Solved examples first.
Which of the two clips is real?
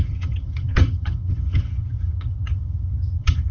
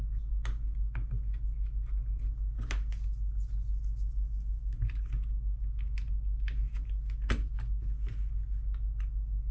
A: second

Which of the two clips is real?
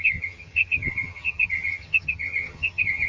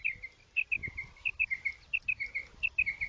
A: second